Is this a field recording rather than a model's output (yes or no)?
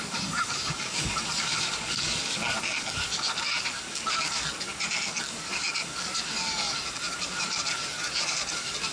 no